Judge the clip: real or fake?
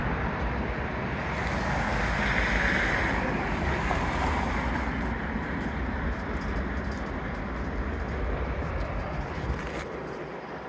real